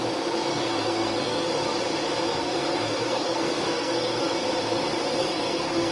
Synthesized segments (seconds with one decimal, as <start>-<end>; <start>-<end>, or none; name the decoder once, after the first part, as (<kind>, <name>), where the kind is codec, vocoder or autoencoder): 0.5-1.5 (codec, SNAC); 2.3-4.2; 5.2-5.9